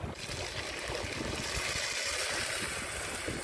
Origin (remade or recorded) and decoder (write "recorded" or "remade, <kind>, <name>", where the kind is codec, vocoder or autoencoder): recorded